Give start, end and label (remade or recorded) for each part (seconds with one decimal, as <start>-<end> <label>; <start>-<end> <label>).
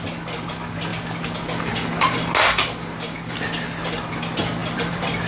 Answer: 0.0-4.6 recorded; 4.6-5.3 remade